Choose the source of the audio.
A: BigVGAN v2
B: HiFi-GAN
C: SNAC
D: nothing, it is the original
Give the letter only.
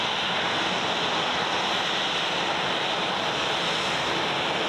D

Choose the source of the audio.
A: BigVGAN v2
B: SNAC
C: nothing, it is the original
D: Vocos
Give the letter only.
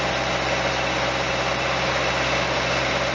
C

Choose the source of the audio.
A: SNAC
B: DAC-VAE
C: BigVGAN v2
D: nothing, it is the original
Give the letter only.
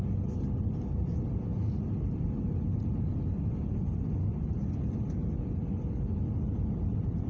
D